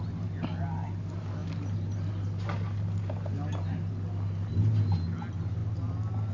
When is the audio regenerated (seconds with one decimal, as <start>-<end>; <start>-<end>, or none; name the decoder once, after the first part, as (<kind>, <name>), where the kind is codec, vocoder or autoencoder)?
none